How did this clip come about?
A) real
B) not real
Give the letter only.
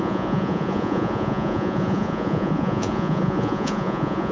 B